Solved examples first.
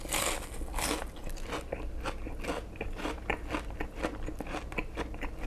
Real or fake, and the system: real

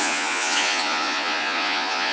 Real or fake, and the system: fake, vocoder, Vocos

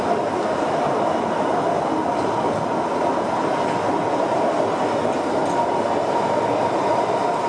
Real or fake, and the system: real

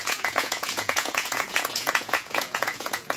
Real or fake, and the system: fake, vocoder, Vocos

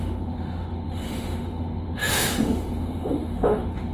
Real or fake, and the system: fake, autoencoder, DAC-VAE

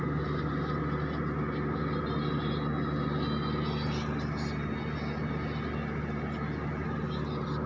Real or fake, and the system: real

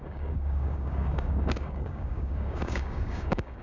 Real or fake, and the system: fake, codec, DAC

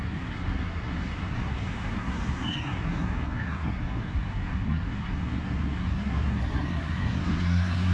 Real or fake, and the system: fake, codec, SNAC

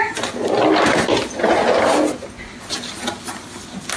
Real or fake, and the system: real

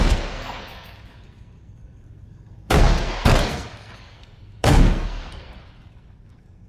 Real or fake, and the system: fake, codec, SNAC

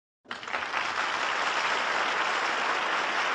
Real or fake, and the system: real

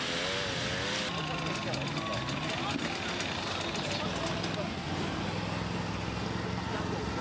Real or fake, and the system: real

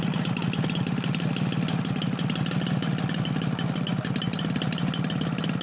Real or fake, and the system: real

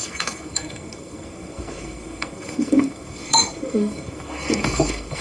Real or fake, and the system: fake, codec, SNAC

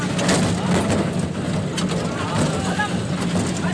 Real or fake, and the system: real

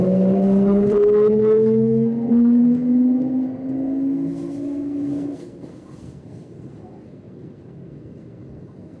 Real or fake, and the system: fake, codec, SNAC